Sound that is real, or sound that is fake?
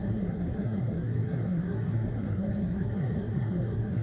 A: fake